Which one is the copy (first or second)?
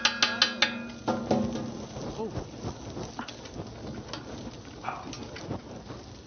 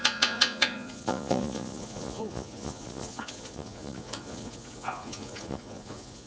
second